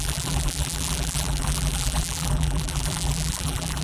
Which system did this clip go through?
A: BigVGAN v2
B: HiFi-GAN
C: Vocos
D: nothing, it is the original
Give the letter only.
A